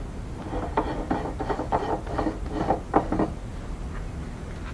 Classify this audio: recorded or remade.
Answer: recorded